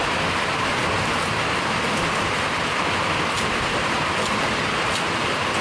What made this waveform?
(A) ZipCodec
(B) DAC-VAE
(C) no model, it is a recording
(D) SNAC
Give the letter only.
C